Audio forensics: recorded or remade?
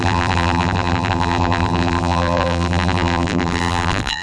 remade